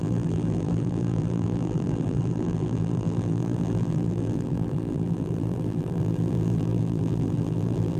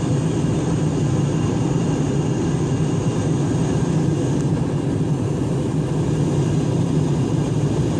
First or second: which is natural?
second